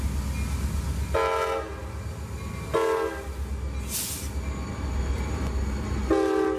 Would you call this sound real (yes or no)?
yes